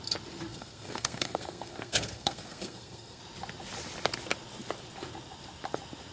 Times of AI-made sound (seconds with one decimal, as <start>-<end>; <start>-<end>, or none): 0.5-3.2

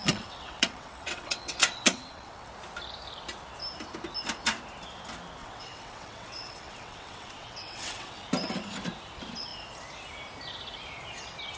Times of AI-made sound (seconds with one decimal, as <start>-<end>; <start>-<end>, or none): 0.0-2.5; 5.4-8.2

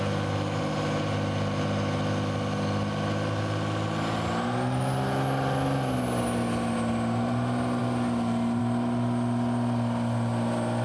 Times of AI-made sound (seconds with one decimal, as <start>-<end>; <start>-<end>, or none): none

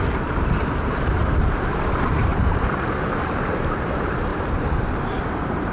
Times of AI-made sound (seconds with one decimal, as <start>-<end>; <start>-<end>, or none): 0.0-4.3; 5.2-5.7

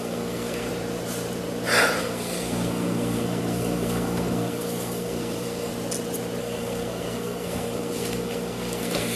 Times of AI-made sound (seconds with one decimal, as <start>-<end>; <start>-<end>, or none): 0.0-0.7; 2.0-5.7; 6.4-9.2